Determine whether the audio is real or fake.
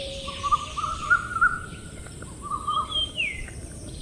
fake